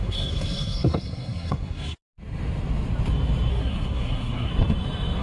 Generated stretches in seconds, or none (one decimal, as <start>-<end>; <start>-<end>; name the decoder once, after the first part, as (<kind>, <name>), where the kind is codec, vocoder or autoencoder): 0.0-2.0 (codec, SNAC); 3.5-4.5

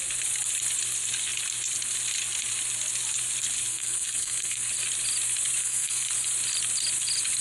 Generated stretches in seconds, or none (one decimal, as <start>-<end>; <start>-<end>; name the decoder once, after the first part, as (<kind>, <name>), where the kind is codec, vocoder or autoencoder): 3.7-4.7 (codec, SNAC); 5.6-6.1

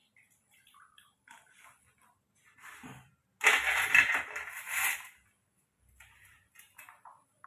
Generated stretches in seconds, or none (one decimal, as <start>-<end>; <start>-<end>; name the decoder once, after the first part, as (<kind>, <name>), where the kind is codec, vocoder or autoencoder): none

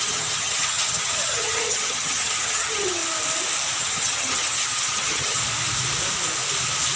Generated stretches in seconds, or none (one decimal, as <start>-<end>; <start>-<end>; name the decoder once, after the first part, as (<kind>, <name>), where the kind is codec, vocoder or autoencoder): 0.0-3.0 (vocoder, HiFi-GAN); 3.8-5.4

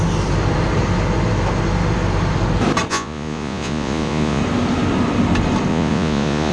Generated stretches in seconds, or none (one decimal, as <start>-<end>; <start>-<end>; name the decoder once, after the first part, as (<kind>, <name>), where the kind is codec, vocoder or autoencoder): 2.9-4.4 (vocoder, Vocos); 5.7-6.5

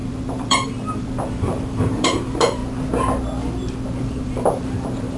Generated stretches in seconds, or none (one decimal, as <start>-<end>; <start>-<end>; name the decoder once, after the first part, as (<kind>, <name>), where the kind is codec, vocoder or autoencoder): 0.0-2.6 (vocoder, BigVGAN v2); 4.0-5.2

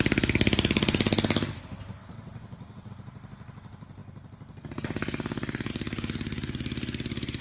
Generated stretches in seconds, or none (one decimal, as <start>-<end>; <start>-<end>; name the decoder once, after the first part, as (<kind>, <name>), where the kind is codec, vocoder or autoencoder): 2.0-2.9 (vocoder, WaveNeXt)

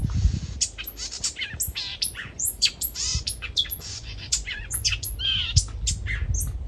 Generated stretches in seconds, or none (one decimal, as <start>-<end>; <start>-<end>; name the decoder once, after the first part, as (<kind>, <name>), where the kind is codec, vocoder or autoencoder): 1.9-5.2 (vocoder, Vocos)